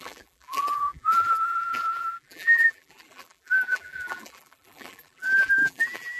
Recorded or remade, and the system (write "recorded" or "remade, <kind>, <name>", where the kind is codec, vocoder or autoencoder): remade, vocoder, BigVGAN v2